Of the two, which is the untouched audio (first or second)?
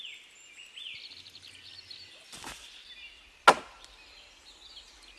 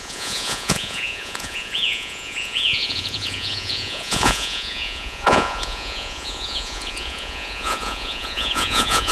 first